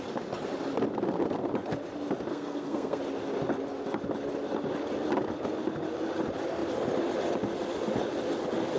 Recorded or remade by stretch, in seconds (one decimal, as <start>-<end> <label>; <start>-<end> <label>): 0.0-2.3 recorded; 2.3-3.0 remade; 3.0-8.8 recorded